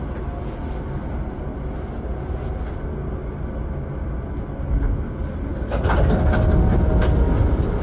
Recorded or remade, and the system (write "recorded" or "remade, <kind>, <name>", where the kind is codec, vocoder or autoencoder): recorded